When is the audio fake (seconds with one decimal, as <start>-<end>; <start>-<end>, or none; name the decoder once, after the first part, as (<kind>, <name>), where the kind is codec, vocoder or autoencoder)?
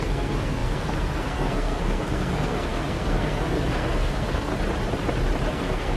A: 0.0-4.5 (codec, SNAC); 5.5-6.0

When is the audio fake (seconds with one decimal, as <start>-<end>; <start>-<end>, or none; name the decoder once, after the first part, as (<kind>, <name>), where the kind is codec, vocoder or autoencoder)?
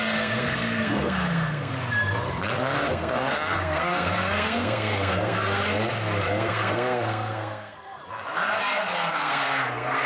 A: 0.0-1.7 (codec, SNAC); 2.9-5.6; 6.2-8.0; 9.1-10.1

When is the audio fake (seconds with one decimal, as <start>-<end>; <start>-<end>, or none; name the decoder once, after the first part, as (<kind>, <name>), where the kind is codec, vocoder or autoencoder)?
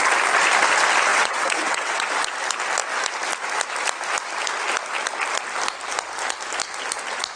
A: 1.1-2.1 (vocoder, WaveNeXt)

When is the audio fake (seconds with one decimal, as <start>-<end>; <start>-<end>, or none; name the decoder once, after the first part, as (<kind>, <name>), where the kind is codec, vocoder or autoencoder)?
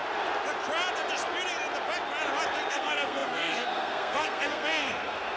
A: 2.7-5.4 (codec, SNAC)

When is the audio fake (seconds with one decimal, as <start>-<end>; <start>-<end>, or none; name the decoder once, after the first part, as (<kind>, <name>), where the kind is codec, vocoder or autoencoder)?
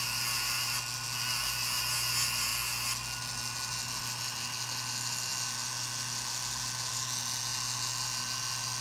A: none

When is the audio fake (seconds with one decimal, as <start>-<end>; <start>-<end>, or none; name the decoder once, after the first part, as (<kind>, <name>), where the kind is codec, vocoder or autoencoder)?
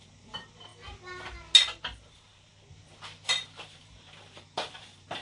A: 0.0-0.7 (vocoder, BigVGAN v2); 1.8-2.5; 3.3-5.2